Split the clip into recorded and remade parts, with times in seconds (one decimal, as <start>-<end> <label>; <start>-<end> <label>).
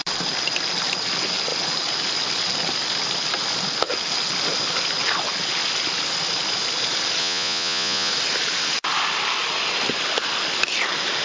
0.0-7.2 recorded; 7.2-8.1 remade; 8.1-11.2 recorded